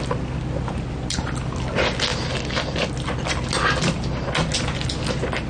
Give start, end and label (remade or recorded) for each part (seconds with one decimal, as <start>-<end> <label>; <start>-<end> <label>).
0.0-5.5 recorded